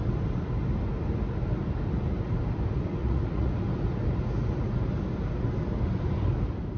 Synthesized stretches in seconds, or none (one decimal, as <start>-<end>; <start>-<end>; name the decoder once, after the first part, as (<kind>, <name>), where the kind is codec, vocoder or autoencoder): 3.0-3.5 (vocoder, Vocos)